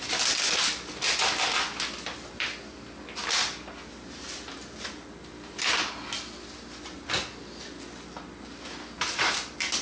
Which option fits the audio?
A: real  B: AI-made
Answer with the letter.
A